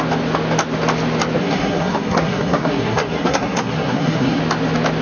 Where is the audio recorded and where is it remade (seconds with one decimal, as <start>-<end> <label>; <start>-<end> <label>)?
0.0-1.4 recorded; 1.4-4.4 remade; 4.4-5.0 recorded